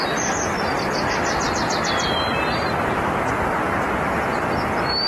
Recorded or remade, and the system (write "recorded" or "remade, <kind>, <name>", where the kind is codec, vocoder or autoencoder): recorded